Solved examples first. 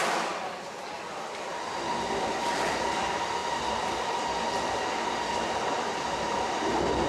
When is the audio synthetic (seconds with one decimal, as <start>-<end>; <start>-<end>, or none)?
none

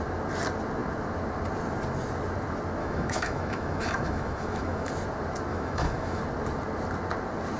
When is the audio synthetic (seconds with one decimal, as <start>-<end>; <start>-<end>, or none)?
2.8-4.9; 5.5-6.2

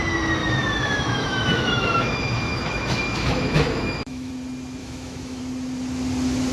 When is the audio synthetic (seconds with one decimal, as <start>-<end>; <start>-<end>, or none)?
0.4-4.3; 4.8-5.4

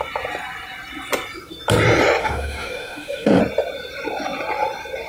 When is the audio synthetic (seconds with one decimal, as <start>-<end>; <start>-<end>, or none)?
2.2-3.4